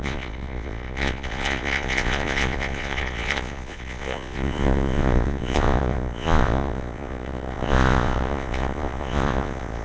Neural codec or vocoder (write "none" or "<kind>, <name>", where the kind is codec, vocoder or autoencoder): vocoder, Vocos